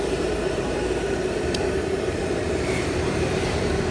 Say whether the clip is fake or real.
fake